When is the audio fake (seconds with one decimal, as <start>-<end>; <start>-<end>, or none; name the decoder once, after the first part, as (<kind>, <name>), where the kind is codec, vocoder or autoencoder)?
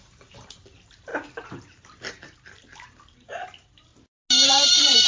0.0-1.1 (vocoder, BigVGAN v2); 2.1-3.9; 4.5-5.1